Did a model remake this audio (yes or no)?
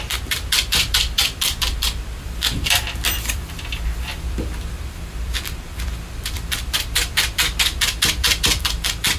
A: yes